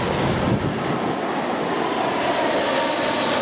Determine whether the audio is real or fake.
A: real